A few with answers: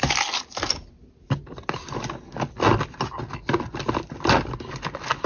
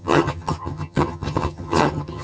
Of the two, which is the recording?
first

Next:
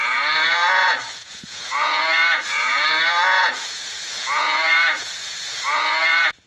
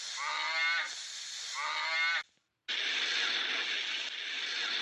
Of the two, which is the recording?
second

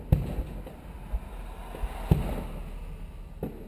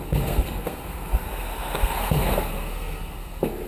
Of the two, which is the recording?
first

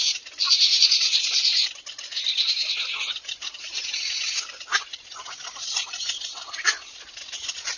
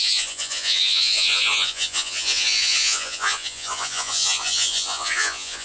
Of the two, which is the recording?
first